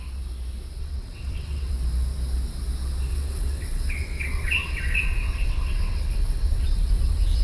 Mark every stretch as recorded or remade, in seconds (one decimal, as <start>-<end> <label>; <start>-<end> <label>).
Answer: 0.0-0.8 recorded; 0.8-1.7 remade; 1.7-3.1 recorded; 3.1-6.9 remade; 6.9-7.4 recorded